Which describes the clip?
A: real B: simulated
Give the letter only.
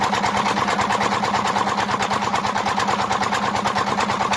A